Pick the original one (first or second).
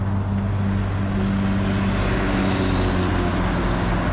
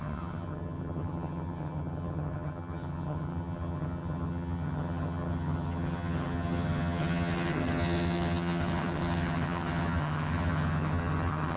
first